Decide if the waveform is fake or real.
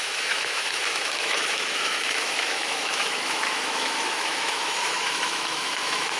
fake